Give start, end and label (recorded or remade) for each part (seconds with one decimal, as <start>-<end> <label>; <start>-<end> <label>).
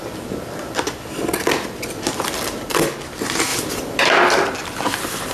0.0-5.3 recorded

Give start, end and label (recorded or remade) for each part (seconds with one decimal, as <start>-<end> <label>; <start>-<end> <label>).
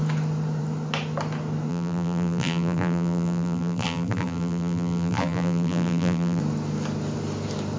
0.0-1.7 recorded; 1.7-6.4 remade; 6.4-7.8 recorded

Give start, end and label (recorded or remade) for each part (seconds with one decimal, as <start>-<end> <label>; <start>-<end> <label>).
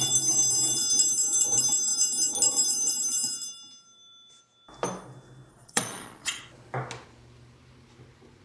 0.0-5.5 recorded; 5.5-6.4 remade; 6.4-8.4 recorded